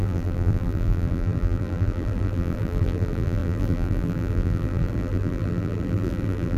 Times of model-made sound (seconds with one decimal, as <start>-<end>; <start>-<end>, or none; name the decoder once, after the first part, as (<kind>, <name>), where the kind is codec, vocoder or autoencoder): 0.0-6.6 (vocoder, BigVGAN v2)